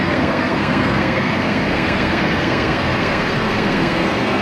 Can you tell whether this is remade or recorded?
remade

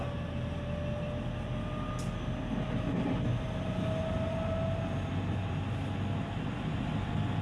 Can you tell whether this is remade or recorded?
recorded